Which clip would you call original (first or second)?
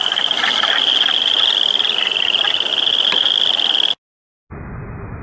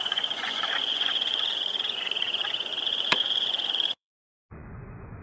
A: first